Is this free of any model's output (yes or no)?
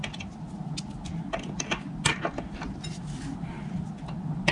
yes